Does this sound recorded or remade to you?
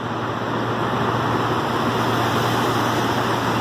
recorded